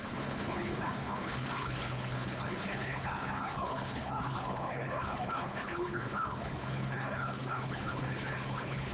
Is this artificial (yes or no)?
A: yes